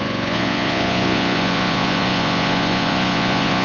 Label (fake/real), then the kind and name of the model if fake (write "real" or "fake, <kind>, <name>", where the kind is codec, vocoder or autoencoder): fake, vocoder, Vocos